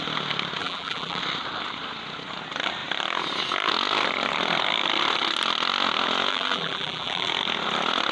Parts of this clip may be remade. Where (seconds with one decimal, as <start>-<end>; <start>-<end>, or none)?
0.6-1.2; 6.3-7.3